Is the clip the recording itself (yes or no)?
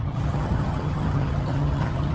no